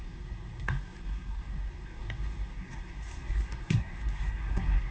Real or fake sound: fake